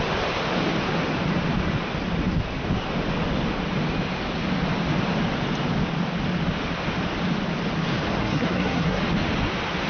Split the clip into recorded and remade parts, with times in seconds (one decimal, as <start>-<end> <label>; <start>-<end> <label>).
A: 0.0-8.2 recorded; 8.2-9.0 remade; 9.0-9.9 recorded